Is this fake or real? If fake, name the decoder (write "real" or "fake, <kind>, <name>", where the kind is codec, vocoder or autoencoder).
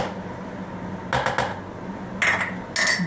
real